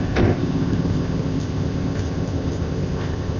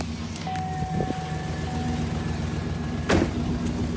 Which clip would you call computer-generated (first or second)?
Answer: first